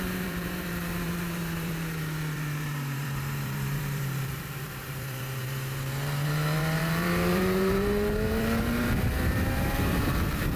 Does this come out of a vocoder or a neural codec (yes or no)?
yes